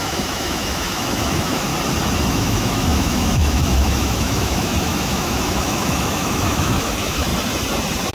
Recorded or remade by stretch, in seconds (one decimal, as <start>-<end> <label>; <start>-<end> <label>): 0.0-1.7 remade; 1.7-2.3 recorded; 2.3-7.3 remade; 7.3-8.1 recorded